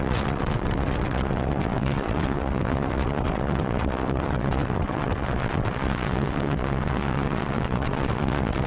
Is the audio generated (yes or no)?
yes